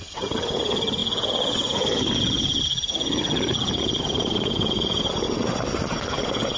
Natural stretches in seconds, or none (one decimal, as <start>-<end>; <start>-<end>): 0.0-6.6